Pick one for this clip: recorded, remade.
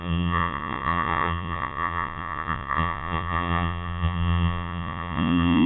remade